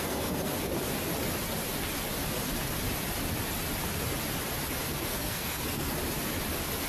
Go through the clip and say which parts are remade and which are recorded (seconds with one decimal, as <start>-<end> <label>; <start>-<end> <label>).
0.0-0.7 remade; 0.7-4.8 recorded; 4.8-6.0 remade; 6.0-6.9 recorded